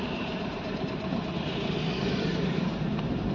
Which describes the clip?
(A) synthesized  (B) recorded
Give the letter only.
A